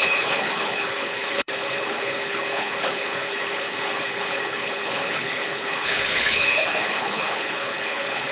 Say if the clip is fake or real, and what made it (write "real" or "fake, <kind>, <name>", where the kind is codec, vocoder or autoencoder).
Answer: fake, codec, HILCodec